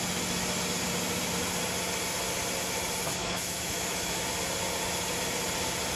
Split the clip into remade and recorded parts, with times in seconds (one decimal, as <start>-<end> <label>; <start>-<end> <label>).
0.0-3.2 recorded; 3.2-4.2 remade; 4.2-6.0 recorded